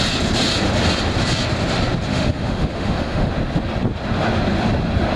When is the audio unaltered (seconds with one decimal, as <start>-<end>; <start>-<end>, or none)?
0.0-2.1; 3.3-5.2